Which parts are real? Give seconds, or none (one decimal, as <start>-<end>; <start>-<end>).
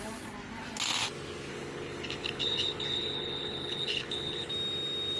0.0-1.5; 4.5-5.2